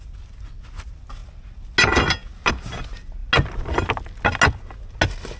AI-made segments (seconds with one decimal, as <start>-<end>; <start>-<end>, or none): none